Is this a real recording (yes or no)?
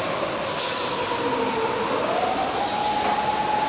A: yes